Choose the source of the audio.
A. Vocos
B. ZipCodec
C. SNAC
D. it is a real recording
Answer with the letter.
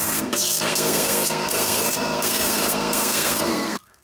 C